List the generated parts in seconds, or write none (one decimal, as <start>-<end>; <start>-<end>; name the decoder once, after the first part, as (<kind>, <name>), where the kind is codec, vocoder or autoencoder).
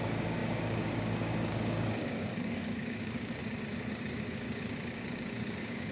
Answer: 0.0-3.4 (codec, DAC); 3.9-5.9